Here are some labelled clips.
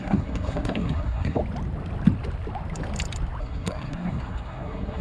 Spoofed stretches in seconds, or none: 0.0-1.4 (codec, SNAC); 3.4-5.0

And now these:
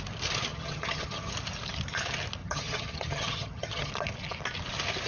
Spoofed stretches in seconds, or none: 0.5-1.3 (vocoder, HiFi-GAN); 2.4-3.9

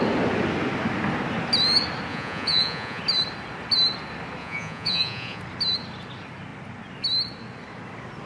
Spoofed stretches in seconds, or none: 2.1-3.0 (vocoder, Vocos); 4.4-5.4

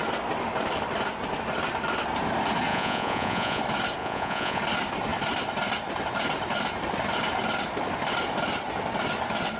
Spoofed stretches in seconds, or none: 2.7-3.6 (vocoder, Vocos); 4.0-4.6

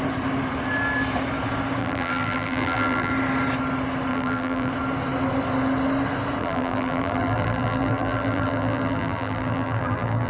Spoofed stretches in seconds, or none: 1.8-3.1 (vocoder, BigVGAN v2); 4.1-4.7; 6.4-10.3